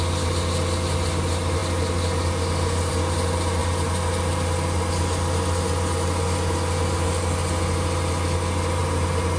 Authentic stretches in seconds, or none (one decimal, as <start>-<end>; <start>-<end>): 0.0-9.4